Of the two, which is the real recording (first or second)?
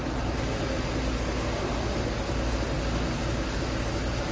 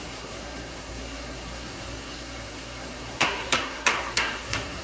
first